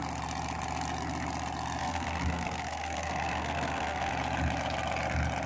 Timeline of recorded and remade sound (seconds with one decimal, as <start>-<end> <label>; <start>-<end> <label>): 0.0-1.8 recorded; 1.8-4.1 remade; 4.1-5.5 recorded